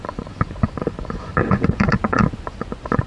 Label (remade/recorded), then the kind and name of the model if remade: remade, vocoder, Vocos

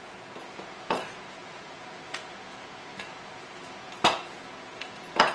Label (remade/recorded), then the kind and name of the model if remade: remade, vocoder, Vocos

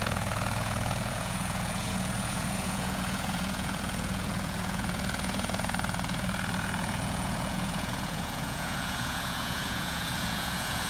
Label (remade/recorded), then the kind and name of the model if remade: remade, vocoder, Vocos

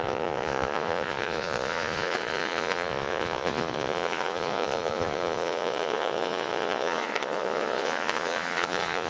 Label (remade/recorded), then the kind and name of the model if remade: remade, vocoder, Vocos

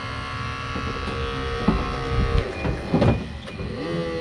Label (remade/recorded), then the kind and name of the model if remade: recorded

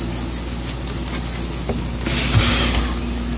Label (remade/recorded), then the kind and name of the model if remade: recorded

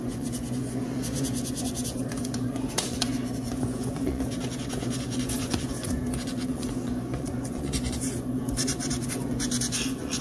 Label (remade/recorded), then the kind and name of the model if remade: remade, vocoder, Vocos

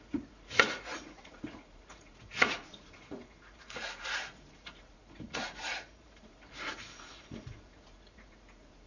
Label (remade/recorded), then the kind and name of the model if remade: remade, vocoder, Vocos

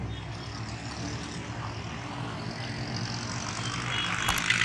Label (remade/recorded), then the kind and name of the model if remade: recorded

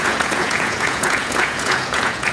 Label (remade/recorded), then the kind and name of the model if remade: remade, vocoder, Vocos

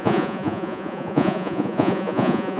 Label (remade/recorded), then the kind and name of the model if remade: remade, vocoder, Vocos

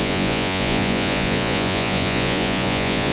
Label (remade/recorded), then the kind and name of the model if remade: remade, vocoder, Vocos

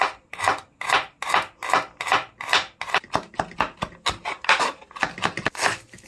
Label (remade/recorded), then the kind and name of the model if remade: recorded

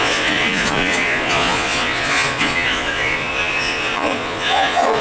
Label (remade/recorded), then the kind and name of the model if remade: remade, vocoder, Vocos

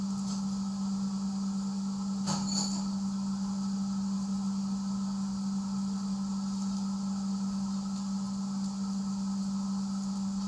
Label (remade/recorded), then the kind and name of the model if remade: recorded